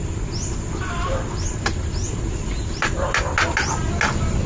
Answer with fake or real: real